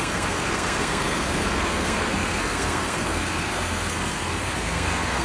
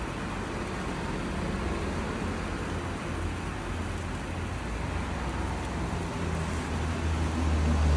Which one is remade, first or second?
first